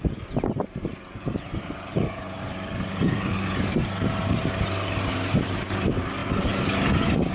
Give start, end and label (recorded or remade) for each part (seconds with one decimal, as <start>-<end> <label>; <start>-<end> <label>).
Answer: 0.0-7.3 remade